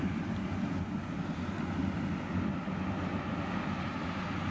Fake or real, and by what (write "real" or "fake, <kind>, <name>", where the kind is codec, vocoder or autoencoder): real